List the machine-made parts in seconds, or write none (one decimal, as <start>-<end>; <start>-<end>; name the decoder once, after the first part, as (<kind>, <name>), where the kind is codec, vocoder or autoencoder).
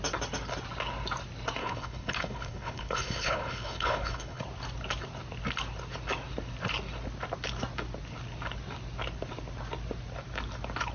1.6-4.4 (codec, HILCodec)